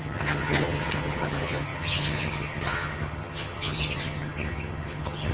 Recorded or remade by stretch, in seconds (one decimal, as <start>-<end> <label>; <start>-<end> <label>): 0.0-5.3 remade